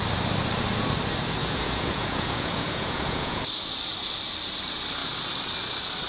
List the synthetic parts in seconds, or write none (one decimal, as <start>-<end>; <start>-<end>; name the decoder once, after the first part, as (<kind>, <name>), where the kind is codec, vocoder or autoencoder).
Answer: 1.4-3.4 (vocoder, Vocos)